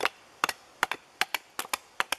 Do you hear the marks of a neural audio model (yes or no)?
no